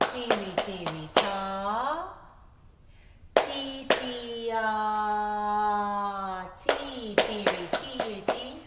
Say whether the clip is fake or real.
real